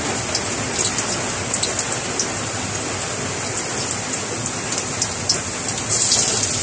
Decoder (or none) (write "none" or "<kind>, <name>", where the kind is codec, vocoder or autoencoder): none